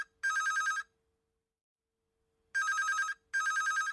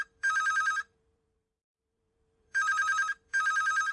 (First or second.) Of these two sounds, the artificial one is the second